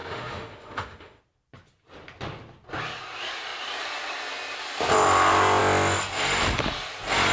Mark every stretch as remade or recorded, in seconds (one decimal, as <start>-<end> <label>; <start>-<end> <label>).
0.0-1.2 remade; 1.2-7.3 recorded

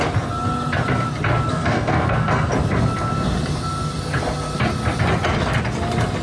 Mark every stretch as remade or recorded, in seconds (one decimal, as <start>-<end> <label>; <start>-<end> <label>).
0.0-1.5 recorded; 1.5-2.5 remade; 2.5-6.2 recorded

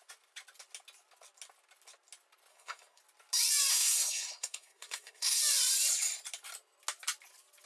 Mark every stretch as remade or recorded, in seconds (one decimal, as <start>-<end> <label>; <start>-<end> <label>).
0.0-2.5 recorded; 2.5-3.0 remade; 3.0-3.7 recorded; 3.7-5.4 remade; 5.4-7.7 recorded

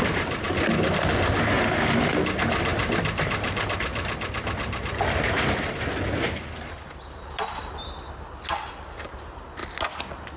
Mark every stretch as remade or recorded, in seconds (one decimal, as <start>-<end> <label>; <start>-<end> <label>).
0.0-10.4 recorded

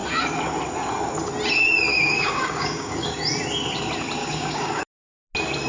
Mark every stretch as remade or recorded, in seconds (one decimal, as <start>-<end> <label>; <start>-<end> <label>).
0.0-1.9 recorded; 1.9-3.1 remade; 3.1-4.2 recorded; 4.2-4.8 remade; 4.8-5.7 recorded

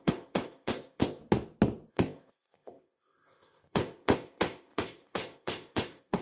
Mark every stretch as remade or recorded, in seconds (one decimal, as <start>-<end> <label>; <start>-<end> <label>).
0.0-1.2 remade; 1.2-1.9 recorded; 1.9-6.2 remade

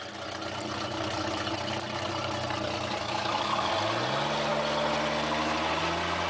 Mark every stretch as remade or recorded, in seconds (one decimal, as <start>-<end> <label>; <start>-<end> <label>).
0.0-3.0 recorded; 3.0-3.7 remade; 3.7-6.3 recorded